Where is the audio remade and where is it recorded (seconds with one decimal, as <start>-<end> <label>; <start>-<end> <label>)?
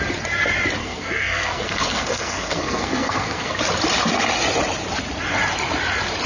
0.0-0.8 recorded; 0.8-3.6 remade; 3.6-6.3 recorded